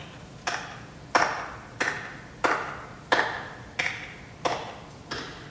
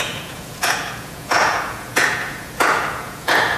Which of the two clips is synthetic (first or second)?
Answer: second